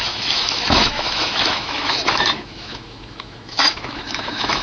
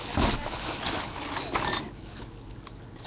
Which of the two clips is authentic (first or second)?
second